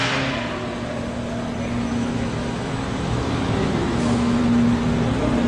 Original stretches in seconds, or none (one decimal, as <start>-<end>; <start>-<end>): 0.0-1.9; 4.4-5.5